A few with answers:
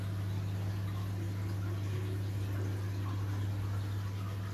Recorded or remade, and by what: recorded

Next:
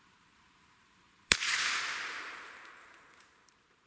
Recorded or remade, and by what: remade, vocoder, BigVGAN v2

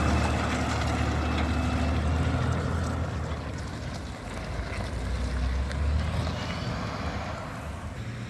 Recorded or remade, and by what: recorded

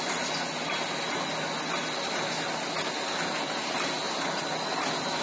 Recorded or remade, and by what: recorded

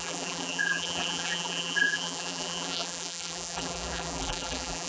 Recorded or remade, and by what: remade, vocoder, BigVGAN v2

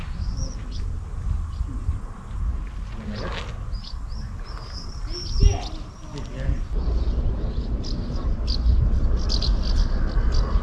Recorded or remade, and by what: recorded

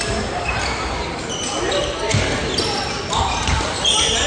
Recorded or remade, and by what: recorded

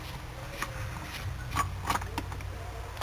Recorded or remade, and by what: recorded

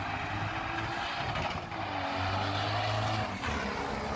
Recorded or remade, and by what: recorded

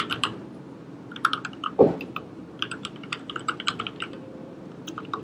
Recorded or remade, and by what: remade, vocoder, BigVGAN v2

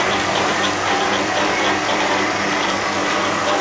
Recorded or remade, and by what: remade, vocoder, BigVGAN v2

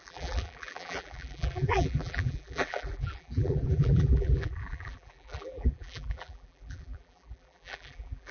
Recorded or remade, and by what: remade, vocoder, BigVGAN v2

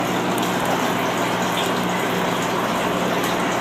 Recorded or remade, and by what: recorded